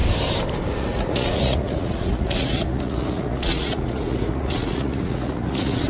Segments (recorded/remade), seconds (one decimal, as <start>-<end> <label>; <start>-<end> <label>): 0.0-0.7 recorded; 0.7-5.9 remade

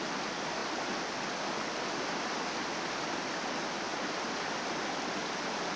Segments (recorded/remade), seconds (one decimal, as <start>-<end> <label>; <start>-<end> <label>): 0.0-3.9 recorded; 3.9-5.8 remade

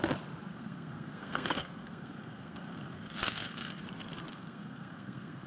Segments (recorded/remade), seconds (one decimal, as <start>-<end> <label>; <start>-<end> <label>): 0.0-0.5 recorded; 0.5-3.8 remade; 3.8-4.3 recorded; 4.3-5.5 remade

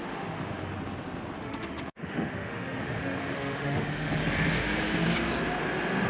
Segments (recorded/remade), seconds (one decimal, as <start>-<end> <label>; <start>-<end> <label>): 0.0-0.7 remade; 0.7-1.4 recorded; 1.4-4.2 remade; 4.2-6.1 recorded

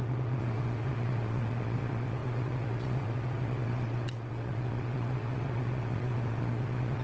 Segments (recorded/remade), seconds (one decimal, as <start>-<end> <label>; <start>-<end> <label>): 0.0-7.0 remade

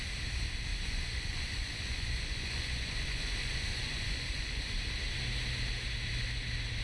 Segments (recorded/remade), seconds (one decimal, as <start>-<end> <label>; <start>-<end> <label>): 0.0-0.7 recorded; 0.7-4.8 remade; 4.8-6.8 recorded

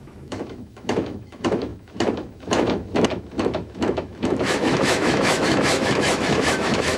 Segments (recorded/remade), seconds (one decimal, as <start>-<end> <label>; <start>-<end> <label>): 0.0-7.0 remade

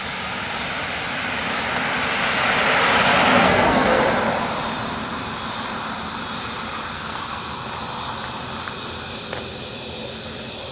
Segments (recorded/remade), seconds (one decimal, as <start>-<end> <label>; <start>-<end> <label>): 0.0-3.3 recorded; 3.3-4.0 remade; 4.0-6.9 recorded; 6.9-7.4 remade; 7.4-10.7 recorded